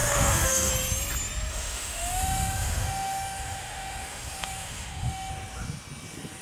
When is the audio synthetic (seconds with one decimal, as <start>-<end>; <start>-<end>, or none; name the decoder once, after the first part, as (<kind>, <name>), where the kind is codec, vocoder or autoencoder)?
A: 0.0-0.7 (autoencoder, DAC-VAE); 1.5-5.3